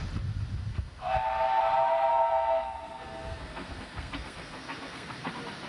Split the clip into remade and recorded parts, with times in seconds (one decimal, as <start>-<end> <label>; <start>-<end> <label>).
0.0-0.7 recorded; 0.7-1.6 remade; 1.6-2.1 recorded; 2.1-5.3 remade; 5.3-5.7 recorded